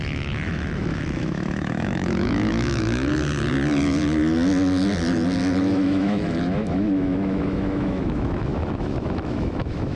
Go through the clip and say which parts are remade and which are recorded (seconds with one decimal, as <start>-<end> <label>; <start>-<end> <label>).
0.0-3.1 remade; 3.1-5.6 recorded; 5.6-10.0 remade